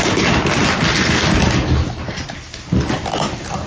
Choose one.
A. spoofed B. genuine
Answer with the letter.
B